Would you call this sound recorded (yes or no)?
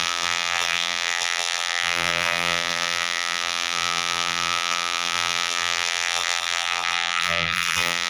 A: no